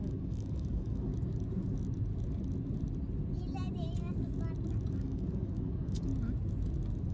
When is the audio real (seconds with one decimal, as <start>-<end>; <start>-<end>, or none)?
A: 1.1-4.9; 6.1-7.1